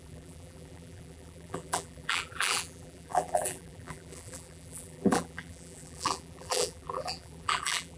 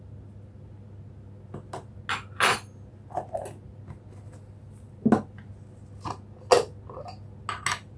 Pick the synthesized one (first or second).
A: first